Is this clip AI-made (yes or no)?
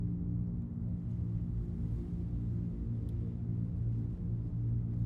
no